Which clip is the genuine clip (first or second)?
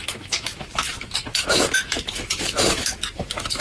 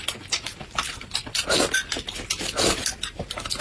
second